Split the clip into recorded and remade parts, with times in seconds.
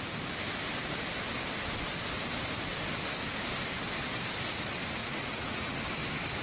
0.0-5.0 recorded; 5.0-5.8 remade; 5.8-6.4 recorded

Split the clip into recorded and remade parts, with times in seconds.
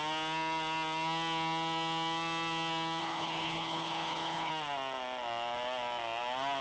0.0-3.0 recorded; 3.0-4.5 remade; 4.5-6.6 recorded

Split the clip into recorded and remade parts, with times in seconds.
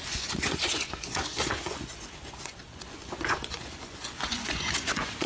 0.0-5.3 remade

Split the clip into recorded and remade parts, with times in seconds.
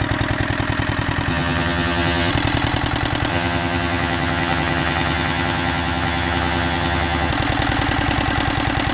0.0-1.3 recorded; 1.3-2.3 remade; 2.3-3.3 recorded; 3.3-7.3 remade; 7.3-8.9 recorded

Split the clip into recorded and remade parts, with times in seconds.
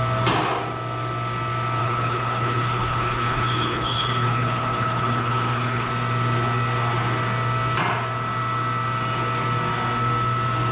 0.0-1.8 recorded; 1.8-5.9 remade; 5.9-10.7 recorded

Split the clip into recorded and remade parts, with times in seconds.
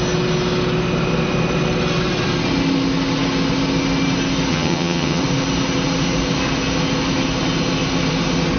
0.0-4.5 recorded; 4.5-5.2 remade; 5.2-8.6 recorded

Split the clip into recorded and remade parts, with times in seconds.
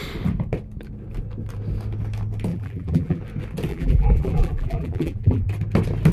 0.0-2.5 recorded; 2.5-3.2 remade; 3.2-3.7 recorded; 3.7-5.5 remade; 5.5-6.1 recorded